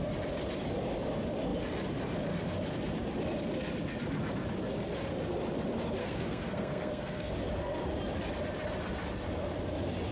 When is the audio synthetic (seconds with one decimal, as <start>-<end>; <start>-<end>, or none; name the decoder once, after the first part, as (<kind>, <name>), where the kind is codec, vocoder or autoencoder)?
6.0-7.3 (codec, SNAC)